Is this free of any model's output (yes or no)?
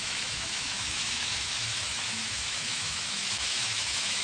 no